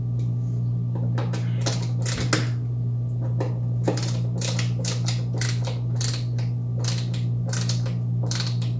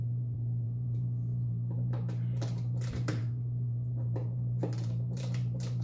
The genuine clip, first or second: first